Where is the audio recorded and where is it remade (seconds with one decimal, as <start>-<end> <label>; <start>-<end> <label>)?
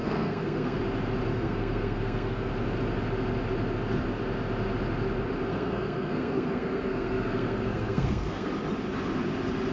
0.0-0.8 remade; 0.8-1.3 recorded; 1.3-2.5 remade; 2.5-5.5 recorded; 5.5-8.5 remade; 8.5-9.7 recorded